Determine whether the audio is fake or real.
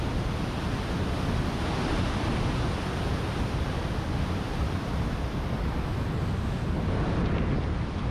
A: real